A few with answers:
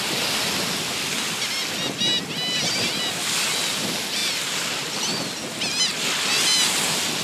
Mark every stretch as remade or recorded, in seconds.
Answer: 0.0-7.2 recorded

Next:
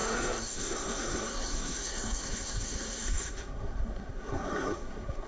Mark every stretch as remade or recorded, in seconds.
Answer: 0.0-5.3 remade